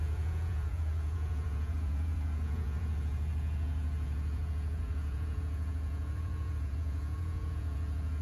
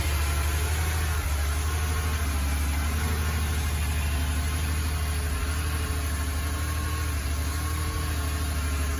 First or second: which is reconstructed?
first